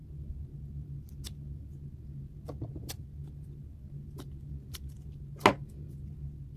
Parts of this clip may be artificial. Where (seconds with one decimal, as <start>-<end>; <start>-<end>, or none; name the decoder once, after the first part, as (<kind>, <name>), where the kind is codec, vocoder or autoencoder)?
none